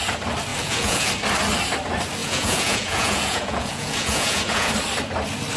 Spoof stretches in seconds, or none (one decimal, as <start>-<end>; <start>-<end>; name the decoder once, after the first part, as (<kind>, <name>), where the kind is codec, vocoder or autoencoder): 0.5-1.1 (vocoder, Vocos); 2.2-4.7